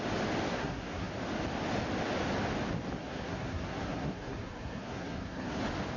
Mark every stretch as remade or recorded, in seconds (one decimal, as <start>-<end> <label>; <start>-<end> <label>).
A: 0.0-0.5 recorded; 0.5-1.1 remade; 1.1-3.0 recorded; 3.0-5.6 remade; 5.6-6.0 recorded